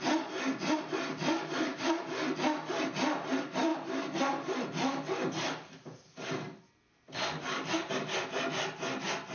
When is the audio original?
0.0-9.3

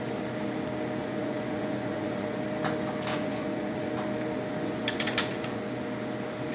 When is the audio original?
0.0-1.0; 2.4-3.1; 3.9-4.5; 5.6-6.5

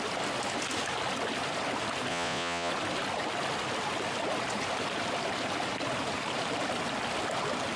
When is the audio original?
0.0-2.1; 2.7-7.8